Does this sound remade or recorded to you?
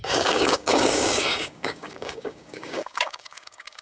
remade